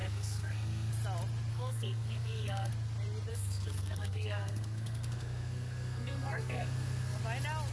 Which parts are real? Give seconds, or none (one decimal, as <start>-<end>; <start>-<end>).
0.9-1.5; 2.7-3.3; 7.2-7.7